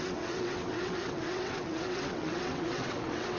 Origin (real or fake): fake